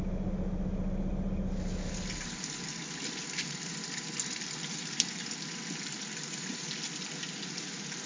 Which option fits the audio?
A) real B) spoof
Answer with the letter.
A